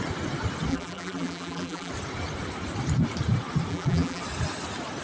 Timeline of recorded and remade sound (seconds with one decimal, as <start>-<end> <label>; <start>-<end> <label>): 0.0-0.7 recorded; 0.7-1.9 remade; 1.9-3.7 recorded; 3.7-4.2 remade; 4.2-5.0 recorded